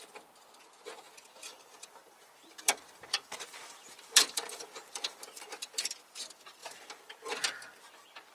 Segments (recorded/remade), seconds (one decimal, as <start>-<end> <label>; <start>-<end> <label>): 0.0-1.5 recorded; 1.5-5.9 remade; 5.9-6.6 recorded; 6.6-7.1 remade; 7.1-8.3 recorded